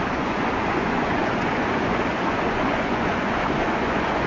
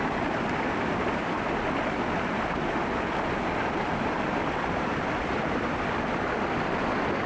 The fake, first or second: first